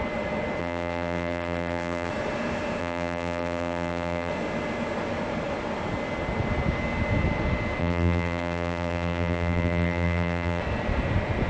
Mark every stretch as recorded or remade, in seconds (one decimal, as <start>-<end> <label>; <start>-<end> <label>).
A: 0.0-0.6 recorded; 0.6-2.1 remade; 2.1-2.8 recorded; 2.8-4.3 remade; 4.3-7.8 recorded; 7.8-10.6 remade; 10.6-11.5 recorded